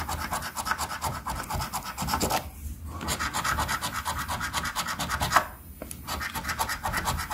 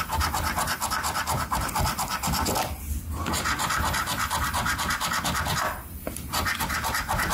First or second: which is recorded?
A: first